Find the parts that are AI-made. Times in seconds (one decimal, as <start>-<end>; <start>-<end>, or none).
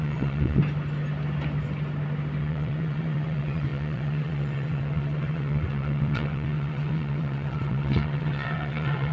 0.0-0.6; 2.4-9.1